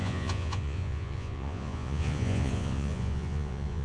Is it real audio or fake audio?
fake